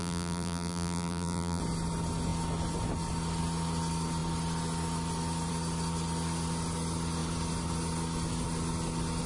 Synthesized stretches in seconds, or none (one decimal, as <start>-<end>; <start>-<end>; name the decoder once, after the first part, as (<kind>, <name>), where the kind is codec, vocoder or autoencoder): 0.0-1.6 (vocoder, BigVGAN v2)